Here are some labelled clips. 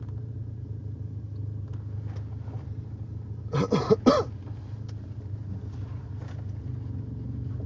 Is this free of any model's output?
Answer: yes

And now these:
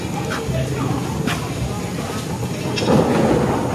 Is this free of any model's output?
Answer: yes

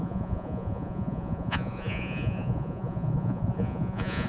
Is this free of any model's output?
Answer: no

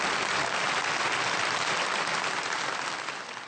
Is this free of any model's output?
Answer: yes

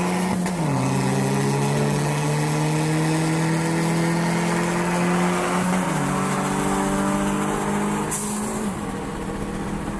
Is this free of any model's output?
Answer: yes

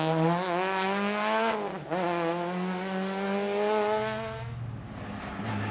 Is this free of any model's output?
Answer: yes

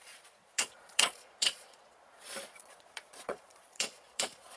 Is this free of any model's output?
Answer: no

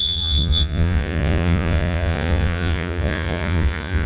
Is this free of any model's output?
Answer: no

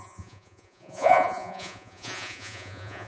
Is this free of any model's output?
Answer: no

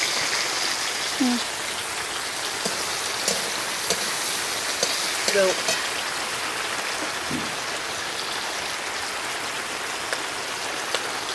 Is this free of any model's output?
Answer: yes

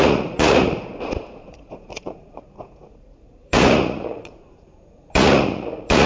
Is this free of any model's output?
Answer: no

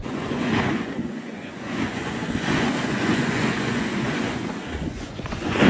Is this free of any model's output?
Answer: no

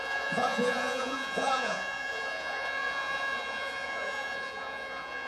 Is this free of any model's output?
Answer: no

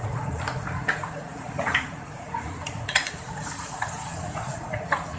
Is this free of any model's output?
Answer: no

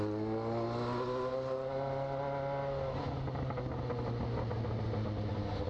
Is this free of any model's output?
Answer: yes